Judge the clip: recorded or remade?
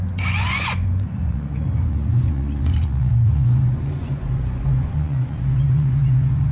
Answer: remade